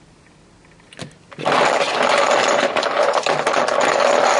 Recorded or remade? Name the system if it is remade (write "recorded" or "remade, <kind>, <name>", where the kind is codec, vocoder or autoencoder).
recorded